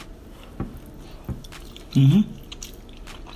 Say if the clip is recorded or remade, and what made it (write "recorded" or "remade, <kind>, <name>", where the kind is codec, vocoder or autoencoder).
recorded